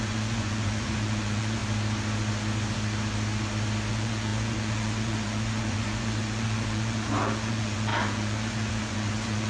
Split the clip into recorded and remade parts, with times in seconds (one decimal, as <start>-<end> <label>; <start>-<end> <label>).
0.0-1.6 remade; 1.6-3.9 recorded; 3.9-9.5 remade